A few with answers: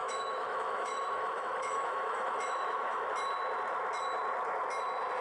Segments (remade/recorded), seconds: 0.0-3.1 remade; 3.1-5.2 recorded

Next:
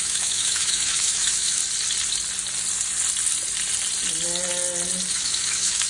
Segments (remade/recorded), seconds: 0.0-1.6 remade; 1.6-5.1 recorded; 5.1-5.9 remade

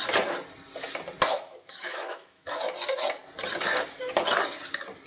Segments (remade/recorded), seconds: 0.0-1.3 recorded; 1.3-2.5 remade; 2.5-5.1 recorded

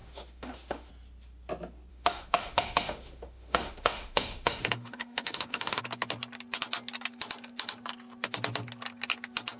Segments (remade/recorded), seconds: 0.0-0.9 remade; 0.9-1.9 recorded; 1.9-5.8 remade; 5.8-9.6 recorded

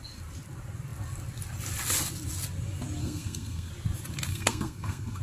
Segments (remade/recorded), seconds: 0.0-3.0 recorded; 3.0-3.7 remade; 3.7-4.3 recorded; 4.3-5.2 remade

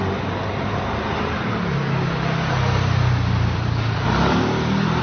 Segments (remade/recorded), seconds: 0.0-5.0 recorded

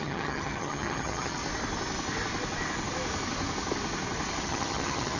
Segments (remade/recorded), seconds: 0.0-1.4 remade; 1.4-4.4 recorded; 4.4-5.2 remade